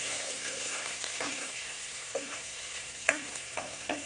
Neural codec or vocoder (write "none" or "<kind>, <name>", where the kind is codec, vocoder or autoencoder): codec, SNAC